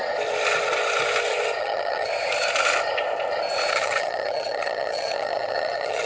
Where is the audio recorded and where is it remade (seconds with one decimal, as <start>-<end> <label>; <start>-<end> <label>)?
0.0-1.6 recorded; 1.6-2.1 remade; 2.1-3.7 recorded; 3.7-6.1 remade